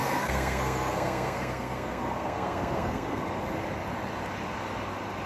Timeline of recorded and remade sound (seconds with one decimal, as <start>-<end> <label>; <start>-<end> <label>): 0.0-3.2 remade; 3.2-5.3 recorded